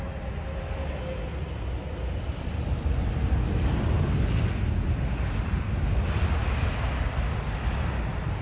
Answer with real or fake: real